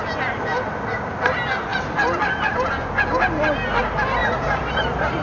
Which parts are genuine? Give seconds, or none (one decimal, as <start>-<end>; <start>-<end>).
0.0-1.7; 2.7-4.2; 4.8-5.2